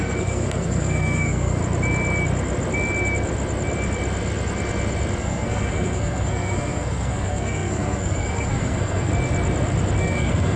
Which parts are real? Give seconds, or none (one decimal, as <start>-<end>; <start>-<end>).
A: 1.6-5.2; 9.1-10.0